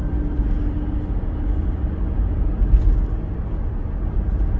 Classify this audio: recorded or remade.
recorded